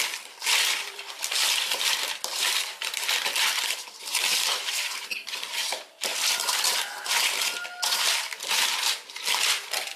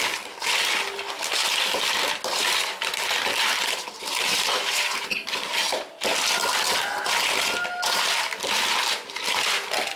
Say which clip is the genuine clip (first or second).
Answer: second